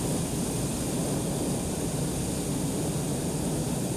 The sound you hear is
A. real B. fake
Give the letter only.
A